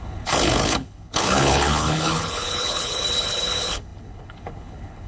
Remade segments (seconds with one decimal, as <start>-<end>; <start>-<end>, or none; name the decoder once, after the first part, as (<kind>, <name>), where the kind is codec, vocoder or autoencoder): 0.0-5.1 (codec, HILCodec)